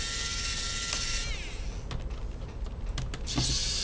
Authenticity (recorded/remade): recorded